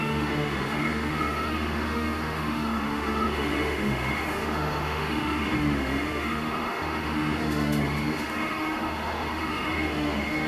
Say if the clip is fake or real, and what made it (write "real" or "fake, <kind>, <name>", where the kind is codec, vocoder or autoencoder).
fake, autoencoder, DAC-VAE